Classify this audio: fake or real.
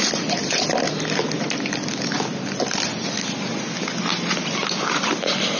real